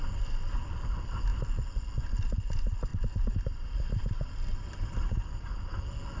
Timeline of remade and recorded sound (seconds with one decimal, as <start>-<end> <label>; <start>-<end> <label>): 0.0-6.2 recorded